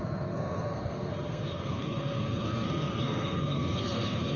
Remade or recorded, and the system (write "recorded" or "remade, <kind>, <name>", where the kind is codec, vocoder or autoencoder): remade, codec, SNAC